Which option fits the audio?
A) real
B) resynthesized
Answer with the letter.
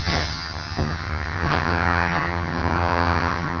B